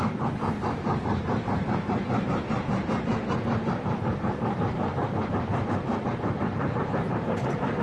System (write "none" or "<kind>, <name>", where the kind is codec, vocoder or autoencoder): vocoder, BigVGAN v2